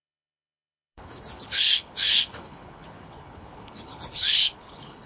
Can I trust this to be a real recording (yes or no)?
no